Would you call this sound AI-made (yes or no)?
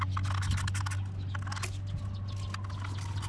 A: no